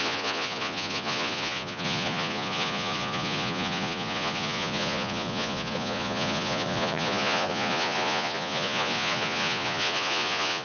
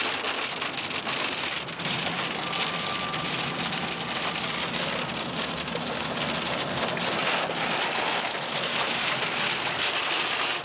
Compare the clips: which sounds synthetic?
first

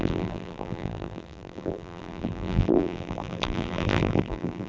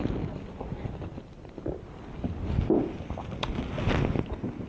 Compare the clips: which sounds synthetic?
first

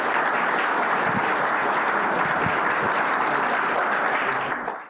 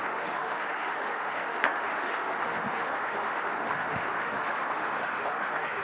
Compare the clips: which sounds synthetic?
second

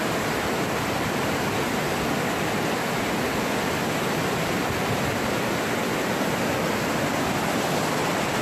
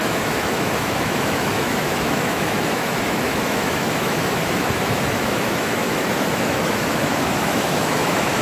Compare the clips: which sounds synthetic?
second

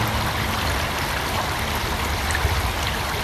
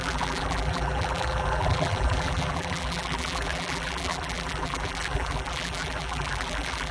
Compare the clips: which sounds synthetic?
second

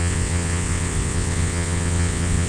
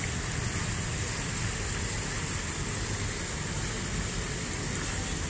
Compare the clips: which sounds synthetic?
first